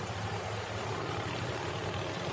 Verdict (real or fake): real